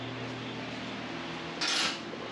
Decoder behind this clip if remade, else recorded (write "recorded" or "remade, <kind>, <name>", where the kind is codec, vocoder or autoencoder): recorded